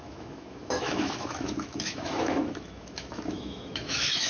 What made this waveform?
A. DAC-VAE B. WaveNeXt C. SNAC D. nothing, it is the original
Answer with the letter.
A